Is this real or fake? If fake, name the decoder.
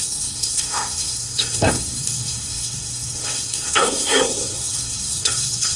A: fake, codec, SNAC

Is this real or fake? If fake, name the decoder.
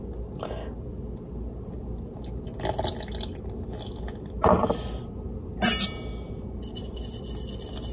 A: real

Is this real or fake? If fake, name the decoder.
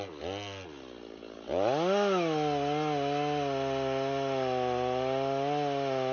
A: real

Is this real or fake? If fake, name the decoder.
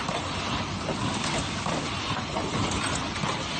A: real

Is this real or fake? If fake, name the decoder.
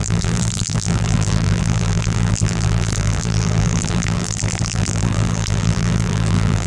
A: fake, vocoder, BigVGAN v2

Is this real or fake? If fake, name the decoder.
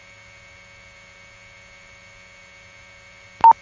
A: real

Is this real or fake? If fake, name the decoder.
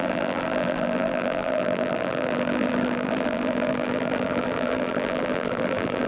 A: fake, vocoder, BigVGAN v2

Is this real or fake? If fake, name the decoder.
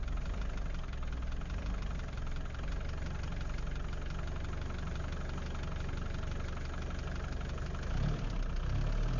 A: real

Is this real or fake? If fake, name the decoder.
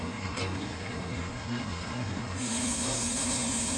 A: fake, codec, SNAC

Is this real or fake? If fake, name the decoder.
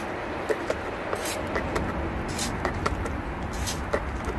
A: real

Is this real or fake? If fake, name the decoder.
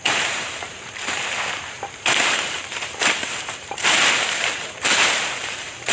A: fake, vocoder, BigVGAN v2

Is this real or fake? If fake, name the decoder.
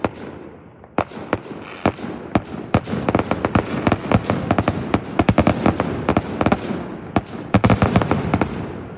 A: real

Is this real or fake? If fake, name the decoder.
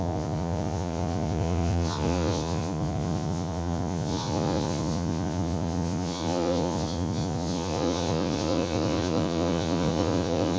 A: fake, vocoder, Vocos